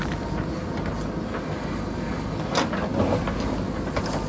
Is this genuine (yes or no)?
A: yes